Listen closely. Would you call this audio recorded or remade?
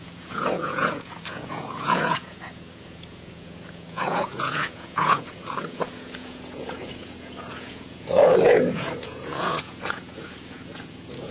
remade